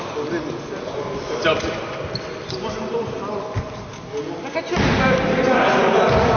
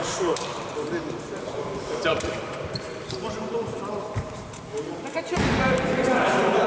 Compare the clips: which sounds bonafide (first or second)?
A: first